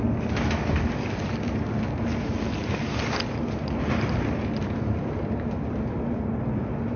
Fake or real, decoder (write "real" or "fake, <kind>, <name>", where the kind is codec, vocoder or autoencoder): real